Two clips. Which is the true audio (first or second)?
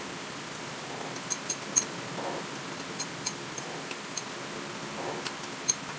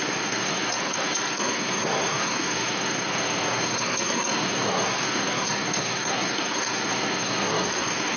first